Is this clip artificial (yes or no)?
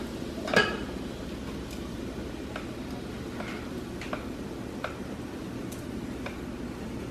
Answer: no